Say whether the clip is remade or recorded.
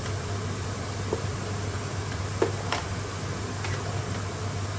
recorded